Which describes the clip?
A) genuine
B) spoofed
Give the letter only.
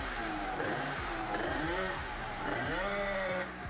B